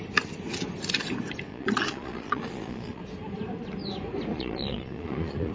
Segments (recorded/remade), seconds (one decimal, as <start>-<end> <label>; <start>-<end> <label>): 0.0-1.5 recorded; 1.5-3.0 remade; 3.0-4.3 recorded; 4.3-5.5 remade